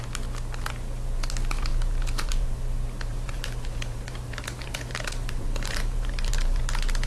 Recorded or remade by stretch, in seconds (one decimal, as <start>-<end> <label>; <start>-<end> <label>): 0.0-1.7 recorded; 1.7-2.6 remade; 2.6-3.1 recorded; 3.1-6.6 remade; 6.6-7.1 recorded